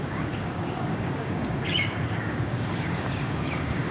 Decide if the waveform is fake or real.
fake